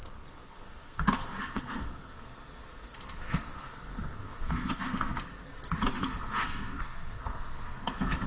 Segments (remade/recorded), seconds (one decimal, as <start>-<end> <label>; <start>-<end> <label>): 0.0-5.5 remade; 5.5-6.0 recorded; 6.0-8.3 remade